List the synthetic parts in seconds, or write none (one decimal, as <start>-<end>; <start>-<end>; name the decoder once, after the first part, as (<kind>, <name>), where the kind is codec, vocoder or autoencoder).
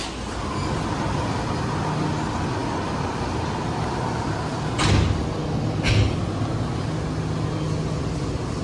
none